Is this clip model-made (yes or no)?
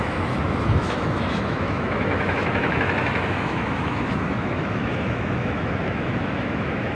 yes